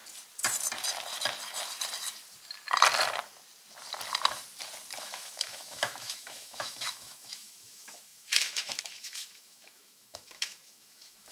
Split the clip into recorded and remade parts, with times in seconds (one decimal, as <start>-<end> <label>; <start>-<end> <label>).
0.0-5.0 recorded; 5.0-11.3 remade